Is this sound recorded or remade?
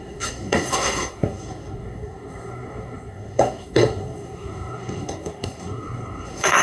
remade